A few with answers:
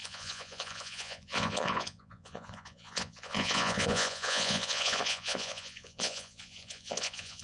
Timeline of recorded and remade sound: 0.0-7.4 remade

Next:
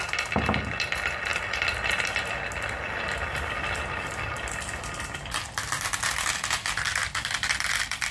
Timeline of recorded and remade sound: 0.0-8.1 recorded

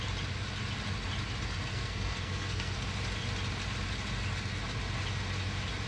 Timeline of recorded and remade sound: 0.0-1.7 recorded; 1.7-2.9 remade; 2.9-5.9 recorded